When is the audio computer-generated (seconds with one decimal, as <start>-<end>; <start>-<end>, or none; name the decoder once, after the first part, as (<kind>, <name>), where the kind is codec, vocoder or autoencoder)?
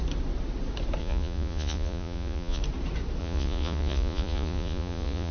1.0-2.6 (vocoder, Vocos); 3.2-5.3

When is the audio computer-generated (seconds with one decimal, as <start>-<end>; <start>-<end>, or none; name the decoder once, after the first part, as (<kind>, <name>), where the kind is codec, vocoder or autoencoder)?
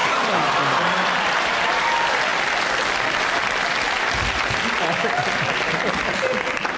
0.0-2.3 (vocoder, BigVGAN v2)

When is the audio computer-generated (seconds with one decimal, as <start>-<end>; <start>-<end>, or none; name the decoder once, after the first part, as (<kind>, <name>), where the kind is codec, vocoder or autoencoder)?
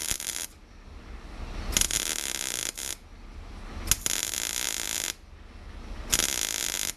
none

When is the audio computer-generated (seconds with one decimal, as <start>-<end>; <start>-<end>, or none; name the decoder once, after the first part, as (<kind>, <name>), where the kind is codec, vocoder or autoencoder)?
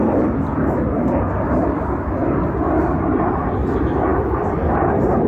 4.1-5.3 (vocoder, BigVGAN v2)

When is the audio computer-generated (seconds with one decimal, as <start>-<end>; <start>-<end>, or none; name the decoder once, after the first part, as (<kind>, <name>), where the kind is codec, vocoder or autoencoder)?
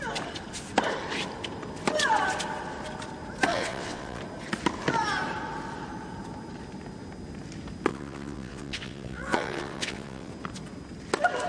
3.5-4.2 (vocoder, WaveNeXt); 7.9-10.3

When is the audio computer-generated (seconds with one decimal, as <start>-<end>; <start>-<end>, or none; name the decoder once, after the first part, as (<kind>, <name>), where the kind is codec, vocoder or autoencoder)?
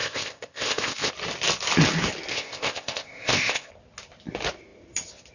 0.0-1.1 (codec, ZipCodec); 2.3-3.7